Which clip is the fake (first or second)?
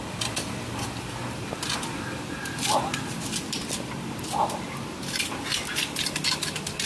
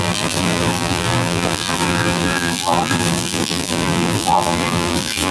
second